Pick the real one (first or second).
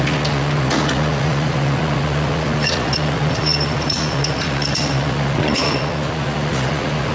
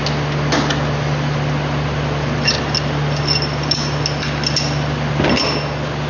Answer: second